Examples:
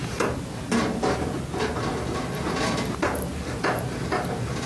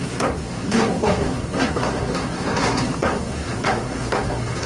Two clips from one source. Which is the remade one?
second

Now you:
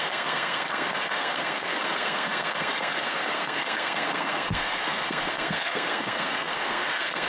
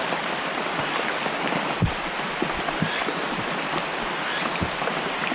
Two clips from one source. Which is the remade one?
first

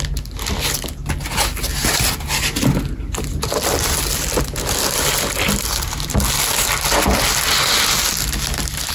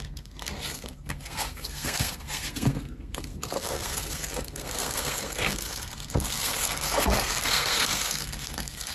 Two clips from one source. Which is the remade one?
second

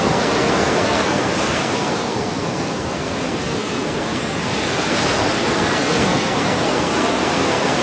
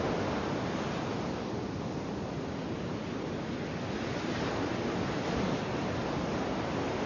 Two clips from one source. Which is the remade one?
first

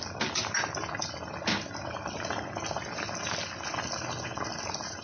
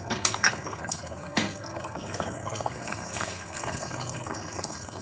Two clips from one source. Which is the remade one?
second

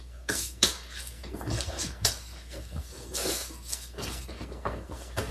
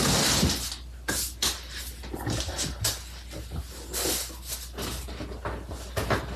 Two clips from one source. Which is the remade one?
first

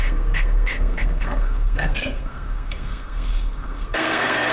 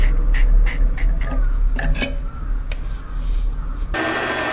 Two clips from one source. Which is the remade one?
first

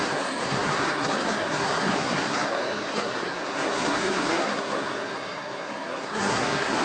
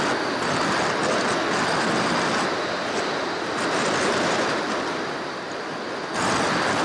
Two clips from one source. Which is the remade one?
first